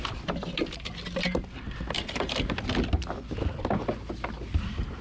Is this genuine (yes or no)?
yes